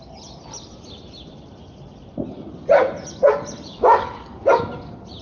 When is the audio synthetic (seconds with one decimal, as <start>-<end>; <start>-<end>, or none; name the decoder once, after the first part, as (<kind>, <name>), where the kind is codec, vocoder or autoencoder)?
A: 3.7-4.6 (codec, DAC)